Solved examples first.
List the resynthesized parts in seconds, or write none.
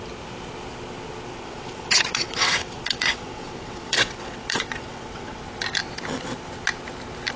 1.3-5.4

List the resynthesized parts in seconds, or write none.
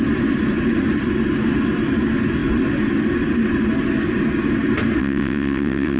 5.0-6.0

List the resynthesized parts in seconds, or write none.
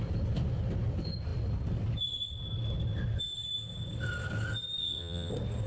4.8-5.3